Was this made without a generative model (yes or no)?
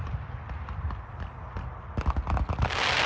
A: yes